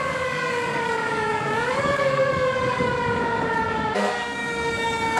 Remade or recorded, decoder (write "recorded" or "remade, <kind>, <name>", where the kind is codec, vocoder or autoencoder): remade, codec, DAC